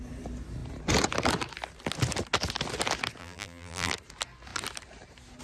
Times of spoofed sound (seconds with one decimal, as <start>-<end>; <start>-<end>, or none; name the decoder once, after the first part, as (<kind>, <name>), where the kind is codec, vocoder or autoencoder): 3.2-3.9 (vocoder, BigVGAN v2)

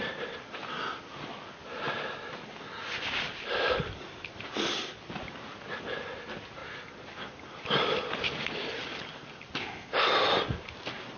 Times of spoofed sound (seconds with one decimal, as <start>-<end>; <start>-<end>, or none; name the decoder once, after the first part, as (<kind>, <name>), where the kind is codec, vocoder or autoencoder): 9.6-10.1 (codec, ZipCodec)

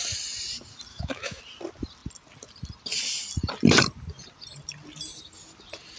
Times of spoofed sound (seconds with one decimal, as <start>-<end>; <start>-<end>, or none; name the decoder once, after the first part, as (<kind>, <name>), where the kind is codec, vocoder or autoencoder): 0.9-1.4 (autoencoder, DAC-VAE)